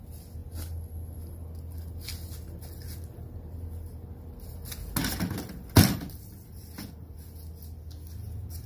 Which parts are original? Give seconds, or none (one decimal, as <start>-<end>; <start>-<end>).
0.0-8.7